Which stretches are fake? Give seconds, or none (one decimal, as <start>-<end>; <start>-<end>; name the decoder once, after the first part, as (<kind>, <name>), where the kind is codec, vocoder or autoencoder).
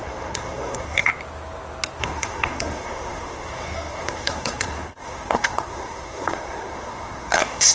0.0-1.1 (codec, SNAC); 2.0-7.7